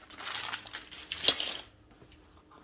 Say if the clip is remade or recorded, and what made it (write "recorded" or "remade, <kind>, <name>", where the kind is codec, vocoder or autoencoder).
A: recorded